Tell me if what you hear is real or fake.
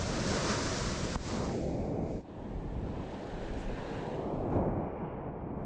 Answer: real